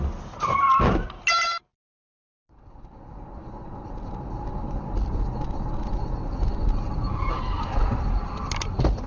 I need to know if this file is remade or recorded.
recorded